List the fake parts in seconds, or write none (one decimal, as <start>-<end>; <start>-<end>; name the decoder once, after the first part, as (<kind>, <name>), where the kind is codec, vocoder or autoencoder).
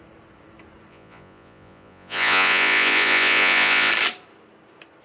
0.9-3.9 (vocoder, Vocos)